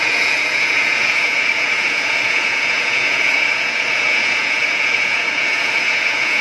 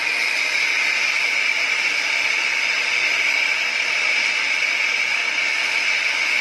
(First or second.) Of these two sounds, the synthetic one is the first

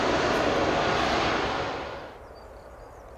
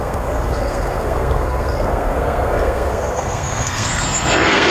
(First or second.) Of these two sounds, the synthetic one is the second